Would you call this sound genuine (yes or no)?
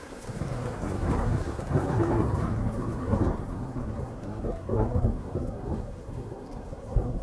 no